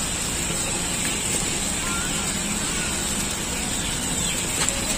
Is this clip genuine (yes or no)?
yes